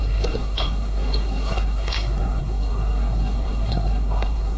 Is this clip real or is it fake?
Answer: fake